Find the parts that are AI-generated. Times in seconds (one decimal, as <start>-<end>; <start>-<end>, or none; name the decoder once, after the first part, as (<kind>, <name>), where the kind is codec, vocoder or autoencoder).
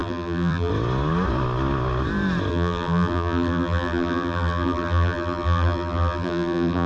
0.0-0.7 (vocoder, BigVGAN v2); 2.5-6.9